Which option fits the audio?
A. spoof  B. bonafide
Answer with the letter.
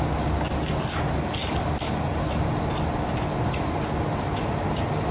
B